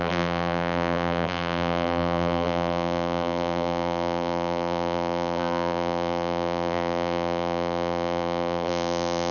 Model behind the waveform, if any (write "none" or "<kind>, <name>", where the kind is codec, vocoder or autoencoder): vocoder, BigVGAN v2